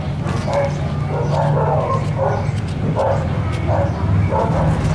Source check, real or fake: real